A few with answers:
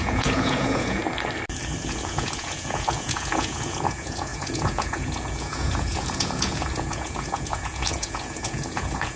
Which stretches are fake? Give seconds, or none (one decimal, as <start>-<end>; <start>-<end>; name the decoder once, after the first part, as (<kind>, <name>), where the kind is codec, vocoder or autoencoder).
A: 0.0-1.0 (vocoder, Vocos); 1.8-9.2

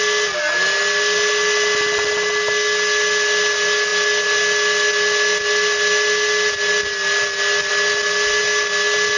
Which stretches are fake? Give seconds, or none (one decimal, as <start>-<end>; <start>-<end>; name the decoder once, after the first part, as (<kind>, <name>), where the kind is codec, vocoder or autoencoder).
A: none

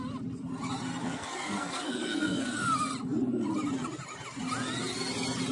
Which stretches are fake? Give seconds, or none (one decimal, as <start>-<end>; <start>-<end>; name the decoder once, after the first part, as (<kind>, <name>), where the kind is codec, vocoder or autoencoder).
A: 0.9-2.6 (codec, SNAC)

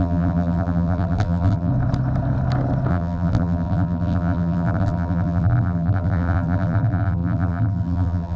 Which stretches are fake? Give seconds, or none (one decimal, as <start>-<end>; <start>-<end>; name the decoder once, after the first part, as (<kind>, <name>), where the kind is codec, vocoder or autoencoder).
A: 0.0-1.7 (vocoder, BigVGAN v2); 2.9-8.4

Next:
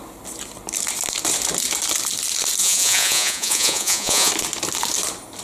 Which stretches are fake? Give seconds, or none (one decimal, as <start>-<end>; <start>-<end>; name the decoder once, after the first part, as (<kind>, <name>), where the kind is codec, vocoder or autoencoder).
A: 2.6-4.3 (vocoder, Vocos)